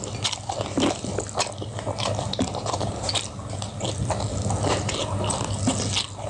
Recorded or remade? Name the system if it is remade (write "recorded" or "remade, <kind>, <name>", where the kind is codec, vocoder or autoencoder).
recorded